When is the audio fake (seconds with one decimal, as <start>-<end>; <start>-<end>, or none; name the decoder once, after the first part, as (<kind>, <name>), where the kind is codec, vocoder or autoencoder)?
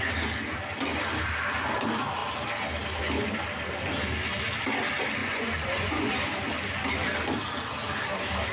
5.2-6.1 (vocoder, Vocos)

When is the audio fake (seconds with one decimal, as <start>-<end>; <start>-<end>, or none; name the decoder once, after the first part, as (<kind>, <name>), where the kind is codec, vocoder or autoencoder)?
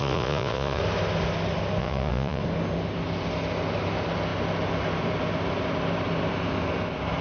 0.0-0.8 (vocoder, Vocos); 1.8-2.4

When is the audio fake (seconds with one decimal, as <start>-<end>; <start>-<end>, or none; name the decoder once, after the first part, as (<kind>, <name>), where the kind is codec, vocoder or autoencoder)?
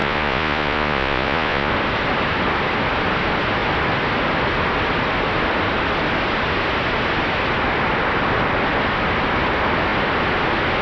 0.0-1.7 (vocoder, Vocos)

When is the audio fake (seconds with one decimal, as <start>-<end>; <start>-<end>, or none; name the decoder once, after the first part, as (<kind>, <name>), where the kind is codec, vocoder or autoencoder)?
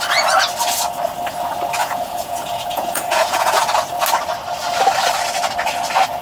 1.8-3.6 (vocoder, Vocos)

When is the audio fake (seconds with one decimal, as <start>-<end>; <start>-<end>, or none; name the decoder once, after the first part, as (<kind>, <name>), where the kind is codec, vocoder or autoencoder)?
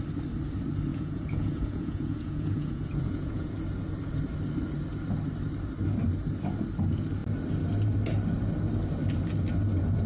0.9-3.5 (vocoder, Vocos)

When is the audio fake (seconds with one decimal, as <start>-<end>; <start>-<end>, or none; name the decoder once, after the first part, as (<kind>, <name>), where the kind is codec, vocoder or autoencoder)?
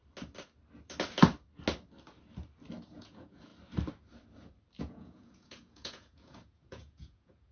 2.8-3.5 (vocoder, Vocos); 4.8-7.5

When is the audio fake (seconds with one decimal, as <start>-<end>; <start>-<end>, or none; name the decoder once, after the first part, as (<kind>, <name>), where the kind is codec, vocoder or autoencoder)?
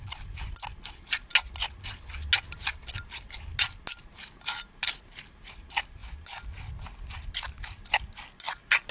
none